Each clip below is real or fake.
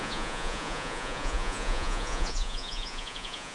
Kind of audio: fake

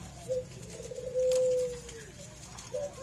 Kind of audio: real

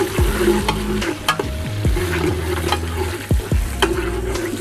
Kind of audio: real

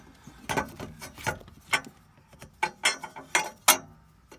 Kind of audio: real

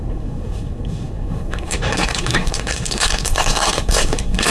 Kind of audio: fake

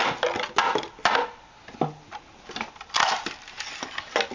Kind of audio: real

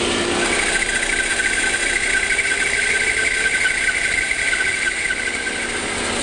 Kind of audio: real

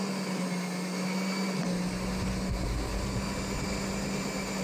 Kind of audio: real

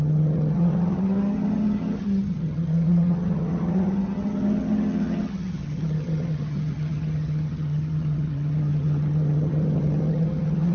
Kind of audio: fake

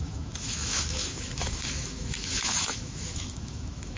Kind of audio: fake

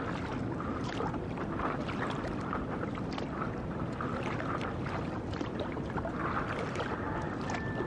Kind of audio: real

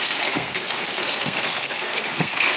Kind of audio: fake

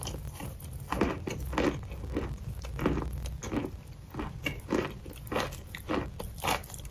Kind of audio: real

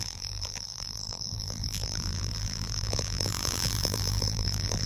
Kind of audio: fake